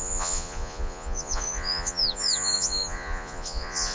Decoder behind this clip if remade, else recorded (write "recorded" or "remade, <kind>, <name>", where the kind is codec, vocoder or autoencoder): remade, vocoder, Vocos